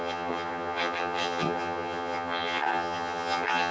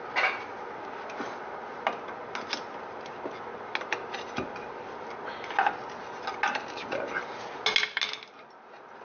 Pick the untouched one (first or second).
second